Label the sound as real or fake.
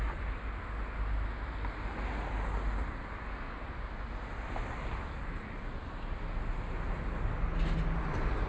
real